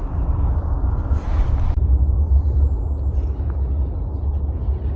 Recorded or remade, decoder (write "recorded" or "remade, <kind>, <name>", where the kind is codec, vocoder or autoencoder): recorded